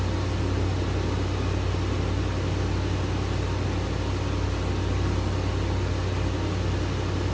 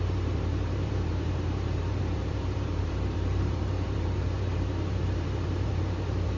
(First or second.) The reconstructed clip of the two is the second